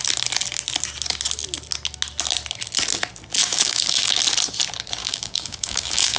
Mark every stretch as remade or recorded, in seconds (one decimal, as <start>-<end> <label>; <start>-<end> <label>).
0.0-3.4 recorded; 3.4-4.2 remade; 4.2-5.0 recorded; 5.0-6.2 remade